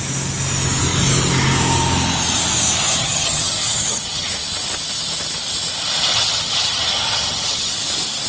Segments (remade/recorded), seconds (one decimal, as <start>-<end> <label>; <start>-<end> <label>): 0.0-3.0 recorded; 3.0-4.3 remade; 4.3-6.1 recorded; 6.1-7.7 remade; 7.7-8.3 recorded

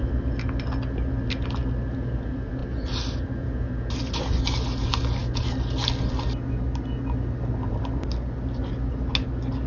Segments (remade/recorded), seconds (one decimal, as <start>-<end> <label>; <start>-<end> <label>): 0.0-9.7 recorded

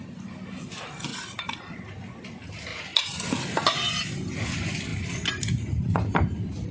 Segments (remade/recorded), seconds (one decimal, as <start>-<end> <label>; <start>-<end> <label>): 0.0-6.7 recorded

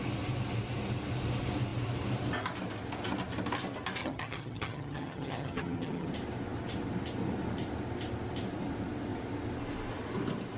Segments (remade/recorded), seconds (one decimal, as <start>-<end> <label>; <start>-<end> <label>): 0.0-4.0 recorded; 4.0-6.1 remade; 6.1-10.6 recorded

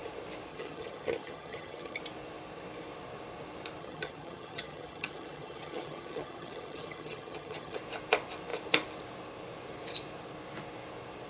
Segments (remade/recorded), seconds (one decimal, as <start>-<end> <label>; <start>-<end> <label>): 0.0-0.5 recorded; 0.5-2.0 remade; 2.0-3.8 recorded; 3.8-7.8 remade; 7.8-11.3 recorded